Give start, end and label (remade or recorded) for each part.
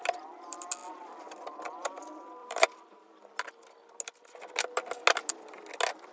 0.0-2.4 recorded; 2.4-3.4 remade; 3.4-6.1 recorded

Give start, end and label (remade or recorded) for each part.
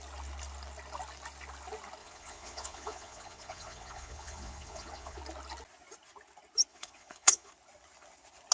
0.0-2.0 recorded; 2.0-5.2 remade; 5.2-6.7 recorded; 6.7-7.5 remade; 7.5-8.5 recorded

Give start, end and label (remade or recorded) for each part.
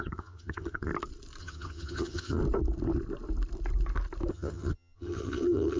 0.0-0.9 remade; 0.9-1.4 recorded; 1.4-2.4 remade; 2.4-4.3 recorded; 4.3-5.8 remade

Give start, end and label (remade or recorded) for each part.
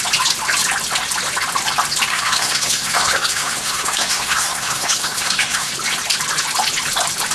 0.0-2.1 recorded; 2.1-5.7 remade; 5.7-7.3 recorded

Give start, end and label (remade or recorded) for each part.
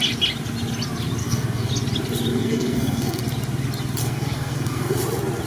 0.0-1.2 recorded; 1.2-1.7 remade; 1.7-2.3 recorded; 2.3-3.2 remade; 3.2-4.0 recorded; 4.0-5.0 remade; 5.0-5.5 recorded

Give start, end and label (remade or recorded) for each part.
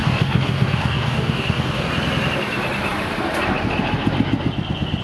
0.0-1.9 remade; 1.9-5.0 recorded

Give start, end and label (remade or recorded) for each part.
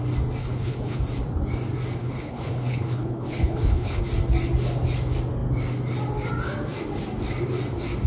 0.0-0.4 recorded; 0.4-1.0 remade; 1.0-2.0 recorded; 2.0-4.0 remade; 4.0-8.1 recorded